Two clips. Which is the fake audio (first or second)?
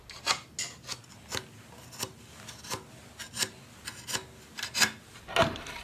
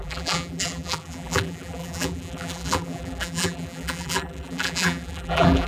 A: second